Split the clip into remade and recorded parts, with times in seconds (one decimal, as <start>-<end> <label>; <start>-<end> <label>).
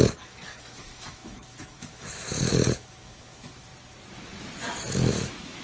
0.0-3.7 remade; 3.7-5.1 recorded; 5.1-5.6 remade